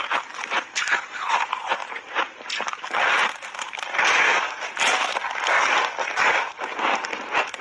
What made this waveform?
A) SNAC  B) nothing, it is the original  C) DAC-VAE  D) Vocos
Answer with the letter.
B